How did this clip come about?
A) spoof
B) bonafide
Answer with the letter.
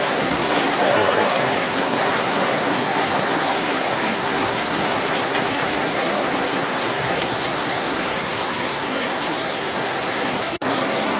A